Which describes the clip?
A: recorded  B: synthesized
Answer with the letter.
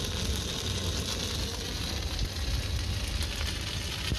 A